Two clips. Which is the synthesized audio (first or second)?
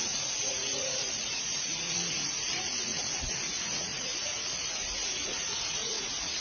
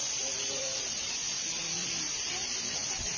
first